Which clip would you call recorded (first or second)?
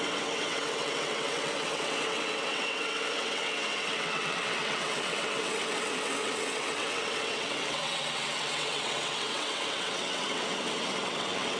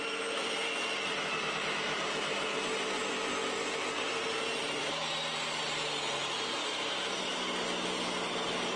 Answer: second